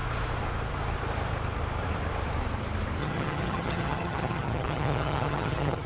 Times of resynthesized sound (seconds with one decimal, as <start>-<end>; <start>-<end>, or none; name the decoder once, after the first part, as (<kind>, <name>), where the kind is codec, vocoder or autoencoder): 3.0-5.9 (vocoder, HiFi-GAN)